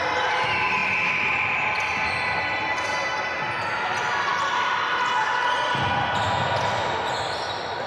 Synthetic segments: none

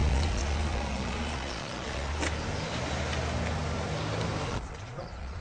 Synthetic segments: 0.0-2.1; 4.5-5.4

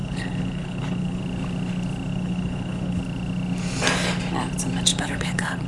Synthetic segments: 0.0-1.2; 2.1-3.0; 4.9-5.7

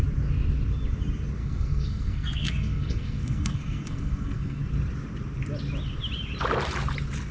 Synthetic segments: 1.4-4.6

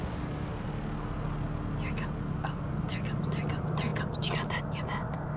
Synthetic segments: none

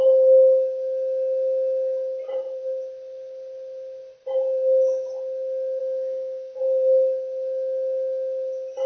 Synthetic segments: 5.8-6.6

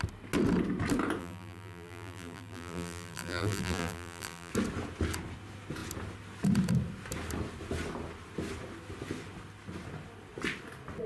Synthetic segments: 1.2-4.5